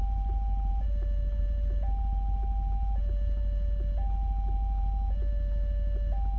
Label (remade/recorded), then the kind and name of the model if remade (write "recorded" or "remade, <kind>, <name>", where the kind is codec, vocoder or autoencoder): recorded